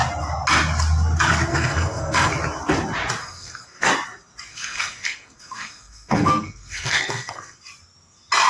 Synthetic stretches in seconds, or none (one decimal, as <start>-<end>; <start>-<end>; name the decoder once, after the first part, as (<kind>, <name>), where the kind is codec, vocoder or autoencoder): 1.5-2.3 (codec, SNAC); 3.2-3.9; 4.5-7.6